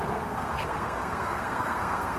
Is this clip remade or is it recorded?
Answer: remade